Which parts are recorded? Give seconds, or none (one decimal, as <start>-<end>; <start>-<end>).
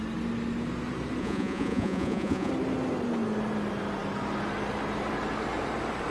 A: 0.0-1.2; 2.5-6.1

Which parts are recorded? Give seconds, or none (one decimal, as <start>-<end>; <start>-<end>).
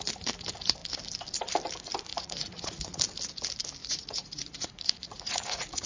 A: 0.0-2.1; 3.0-3.8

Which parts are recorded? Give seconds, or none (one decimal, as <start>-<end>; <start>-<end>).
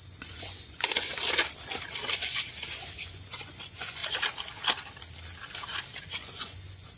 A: 1.1-2.1; 4.0-6.0